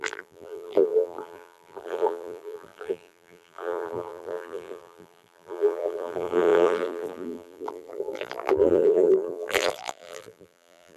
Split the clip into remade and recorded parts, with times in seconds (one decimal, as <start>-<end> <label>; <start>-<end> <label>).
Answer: 0.0-11.0 remade